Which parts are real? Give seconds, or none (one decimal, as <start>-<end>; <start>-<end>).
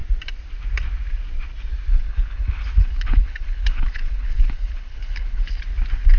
0.0-1.9; 5.6-6.2